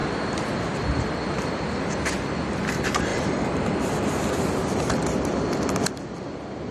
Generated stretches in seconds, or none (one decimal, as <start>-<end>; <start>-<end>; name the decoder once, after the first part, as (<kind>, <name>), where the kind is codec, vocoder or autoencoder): 0.0-2.7 (vocoder, BigVGAN v2); 3.1-3.8